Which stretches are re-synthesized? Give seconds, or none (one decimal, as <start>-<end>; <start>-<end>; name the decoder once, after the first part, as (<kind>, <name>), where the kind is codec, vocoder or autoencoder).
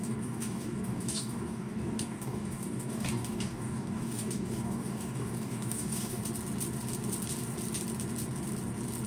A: 0.0-6.2 (codec, DAC)